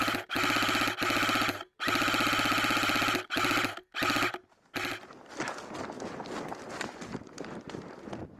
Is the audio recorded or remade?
recorded